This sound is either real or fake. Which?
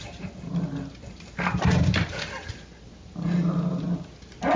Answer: real